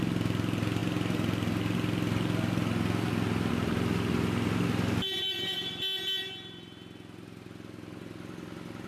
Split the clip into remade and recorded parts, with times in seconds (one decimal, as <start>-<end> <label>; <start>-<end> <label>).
0.0-8.9 recorded